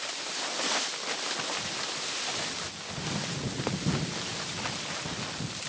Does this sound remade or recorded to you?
recorded